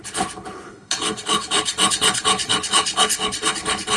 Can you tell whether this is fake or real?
fake